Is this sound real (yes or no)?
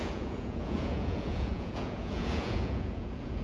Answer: no